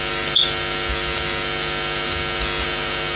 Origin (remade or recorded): recorded